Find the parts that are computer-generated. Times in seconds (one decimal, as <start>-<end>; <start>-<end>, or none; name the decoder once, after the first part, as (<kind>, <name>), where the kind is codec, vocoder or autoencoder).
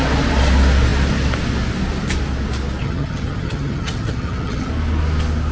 2.8-4.7 (vocoder, HiFi-GAN)